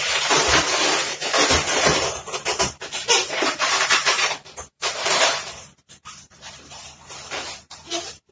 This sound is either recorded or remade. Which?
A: remade